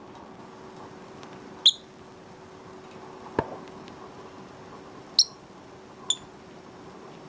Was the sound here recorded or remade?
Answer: recorded